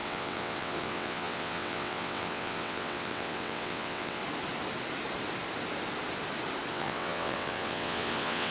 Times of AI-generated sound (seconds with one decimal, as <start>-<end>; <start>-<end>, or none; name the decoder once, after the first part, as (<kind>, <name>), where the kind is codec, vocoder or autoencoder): 0.0-4.2 (vocoder, WaveNeXt); 6.7-8.5